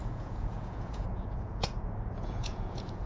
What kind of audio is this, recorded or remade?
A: remade